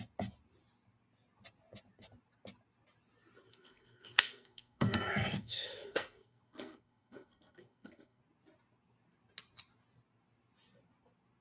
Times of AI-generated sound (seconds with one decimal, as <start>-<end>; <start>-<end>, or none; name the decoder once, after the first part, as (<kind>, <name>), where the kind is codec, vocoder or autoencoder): 3.5-8.2 (codec, SNAC)